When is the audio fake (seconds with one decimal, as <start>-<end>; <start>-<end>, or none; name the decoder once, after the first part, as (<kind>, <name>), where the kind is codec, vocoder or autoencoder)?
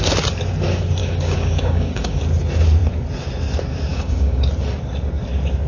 1.0-2.2 (codec, DAC); 3.9-4.5